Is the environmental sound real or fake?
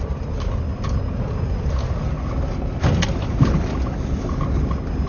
real